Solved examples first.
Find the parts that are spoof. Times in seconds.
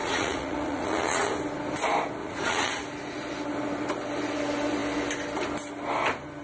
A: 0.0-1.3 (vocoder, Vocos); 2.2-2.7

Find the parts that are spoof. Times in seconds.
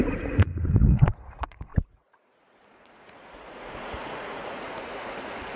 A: 0.0-5.6 (vocoder, Vocos)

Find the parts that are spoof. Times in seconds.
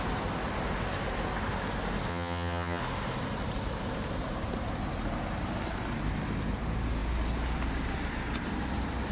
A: 2.1-2.8 (vocoder, HiFi-GAN)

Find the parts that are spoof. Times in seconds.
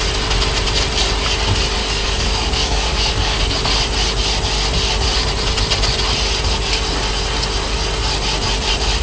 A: 1.8-3.4 (codec, DAC)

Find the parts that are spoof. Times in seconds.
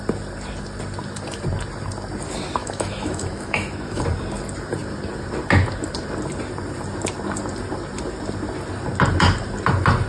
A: 2.6-4.0 (autoencoder, DAC-VAE)